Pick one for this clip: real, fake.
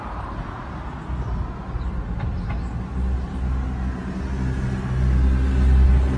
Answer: real